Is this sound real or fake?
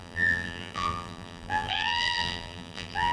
fake